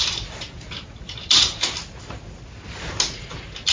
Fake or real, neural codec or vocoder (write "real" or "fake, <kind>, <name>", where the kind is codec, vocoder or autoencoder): real